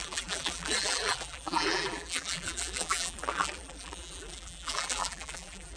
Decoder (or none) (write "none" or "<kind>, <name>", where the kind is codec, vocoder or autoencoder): vocoder, BigVGAN v2